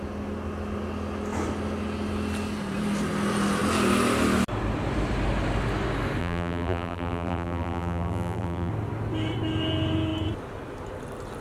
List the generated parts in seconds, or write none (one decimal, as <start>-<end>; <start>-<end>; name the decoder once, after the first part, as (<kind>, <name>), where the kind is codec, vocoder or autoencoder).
6.2-8.7 (vocoder, BigVGAN v2)